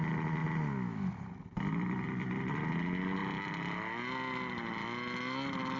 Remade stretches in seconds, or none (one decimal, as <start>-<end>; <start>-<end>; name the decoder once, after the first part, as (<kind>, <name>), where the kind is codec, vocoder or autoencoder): none